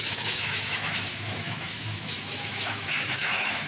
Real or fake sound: fake